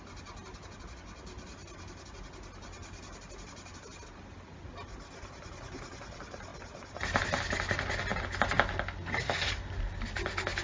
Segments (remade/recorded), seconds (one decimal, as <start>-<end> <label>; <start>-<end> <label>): 0.0-10.6 recorded